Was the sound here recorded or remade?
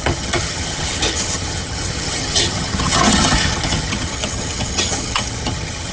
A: remade